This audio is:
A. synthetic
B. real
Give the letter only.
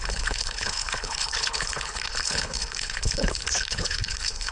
A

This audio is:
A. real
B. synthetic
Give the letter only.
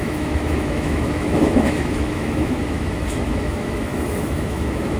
B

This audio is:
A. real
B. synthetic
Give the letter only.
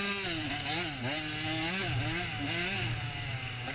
A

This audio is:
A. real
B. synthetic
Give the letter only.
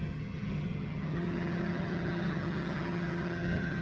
B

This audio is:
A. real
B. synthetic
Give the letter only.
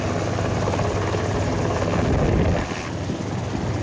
A